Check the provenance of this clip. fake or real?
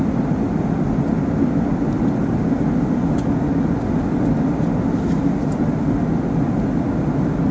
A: real